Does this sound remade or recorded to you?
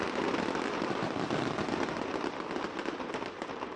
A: recorded